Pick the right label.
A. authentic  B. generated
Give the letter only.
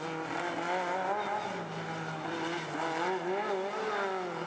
A